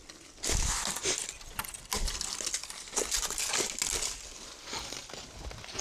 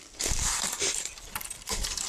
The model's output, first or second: second